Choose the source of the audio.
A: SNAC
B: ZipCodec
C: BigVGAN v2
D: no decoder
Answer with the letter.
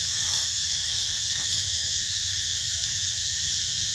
A